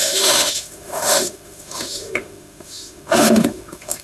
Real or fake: fake